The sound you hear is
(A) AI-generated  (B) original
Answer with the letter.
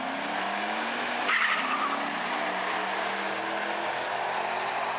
B